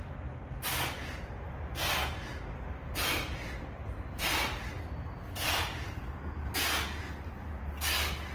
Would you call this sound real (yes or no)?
yes